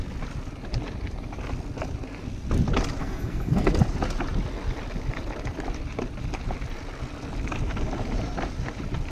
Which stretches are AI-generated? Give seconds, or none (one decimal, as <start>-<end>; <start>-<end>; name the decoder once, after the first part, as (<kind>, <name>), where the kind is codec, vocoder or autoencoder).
3.0-3.7 (codec, SNAC)